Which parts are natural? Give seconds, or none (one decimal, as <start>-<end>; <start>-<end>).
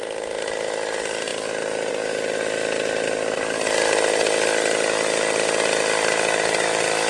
0.0-7.1